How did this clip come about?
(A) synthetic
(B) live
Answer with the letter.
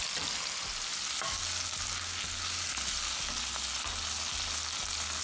B